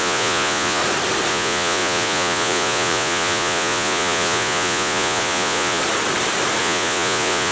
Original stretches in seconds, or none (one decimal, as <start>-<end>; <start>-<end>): 0.8-1.3; 5.8-6.6